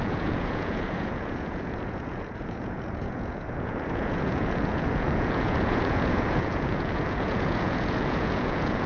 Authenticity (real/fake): fake